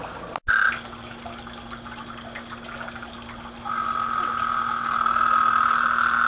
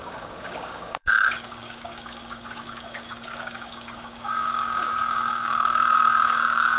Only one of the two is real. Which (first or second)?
first